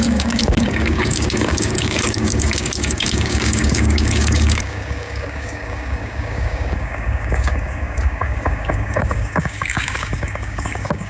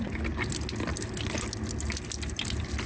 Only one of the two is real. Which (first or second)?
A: second